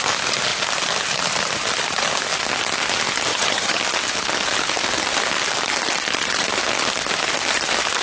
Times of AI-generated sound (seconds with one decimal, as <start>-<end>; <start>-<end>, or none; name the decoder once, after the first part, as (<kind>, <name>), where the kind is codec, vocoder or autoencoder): 3.3-3.8 (vocoder, HiFi-GAN)